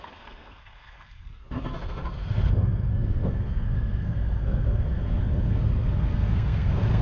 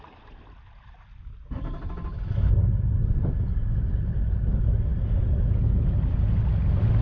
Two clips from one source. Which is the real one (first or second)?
second